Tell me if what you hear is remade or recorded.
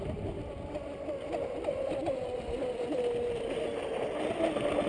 recorded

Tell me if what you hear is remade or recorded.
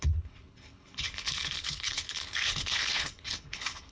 remade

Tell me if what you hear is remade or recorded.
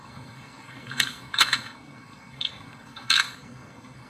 remade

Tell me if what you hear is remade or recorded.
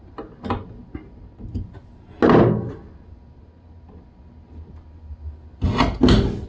recorded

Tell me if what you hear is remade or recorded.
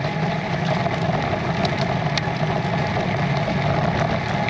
recorded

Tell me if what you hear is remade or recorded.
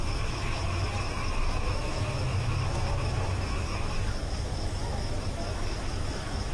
remade